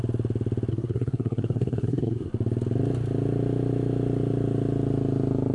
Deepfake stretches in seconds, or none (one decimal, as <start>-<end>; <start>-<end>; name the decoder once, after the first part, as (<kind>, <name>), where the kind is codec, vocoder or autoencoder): 0.7-2.3 (codec, SNAC)